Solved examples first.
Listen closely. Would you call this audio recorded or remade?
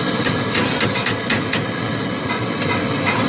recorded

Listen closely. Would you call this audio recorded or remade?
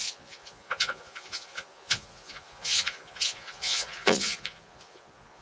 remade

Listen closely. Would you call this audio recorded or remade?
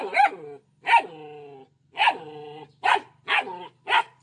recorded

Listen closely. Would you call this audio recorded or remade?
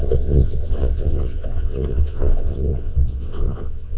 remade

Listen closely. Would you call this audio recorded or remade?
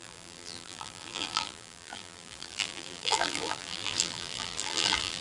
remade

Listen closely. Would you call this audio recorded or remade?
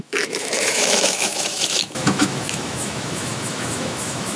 remade